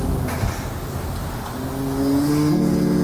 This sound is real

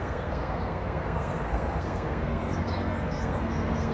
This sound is fake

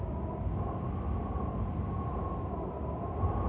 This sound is real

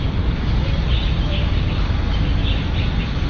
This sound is real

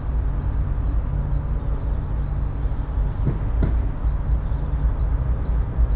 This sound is real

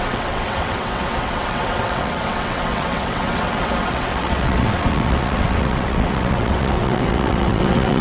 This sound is fake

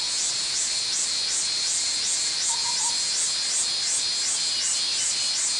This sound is real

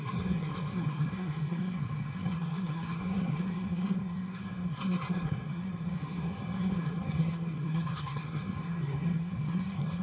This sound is fake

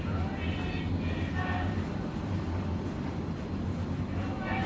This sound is real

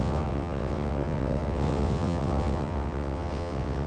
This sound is fake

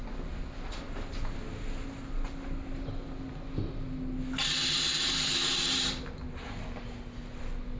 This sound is real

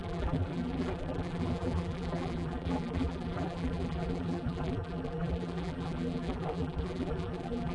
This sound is fake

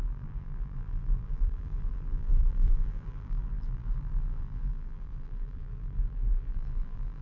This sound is fake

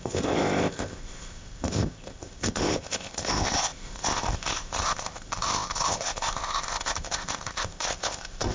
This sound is fake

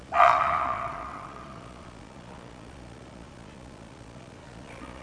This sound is fake